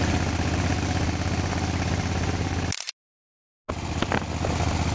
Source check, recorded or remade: recorded